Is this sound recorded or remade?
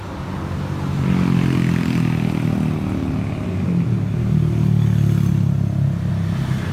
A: recorded